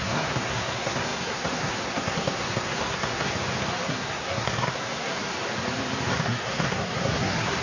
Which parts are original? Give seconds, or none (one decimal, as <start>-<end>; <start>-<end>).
3.3-3.9; 5.3-6.1